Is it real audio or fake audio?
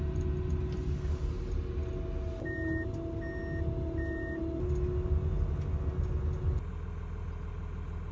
real